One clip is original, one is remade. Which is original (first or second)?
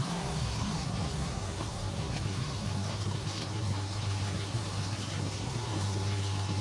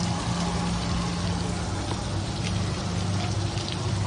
second